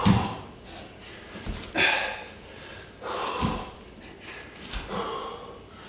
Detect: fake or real real